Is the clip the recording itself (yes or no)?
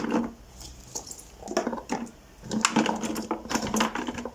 yes